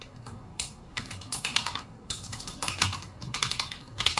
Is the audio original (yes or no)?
no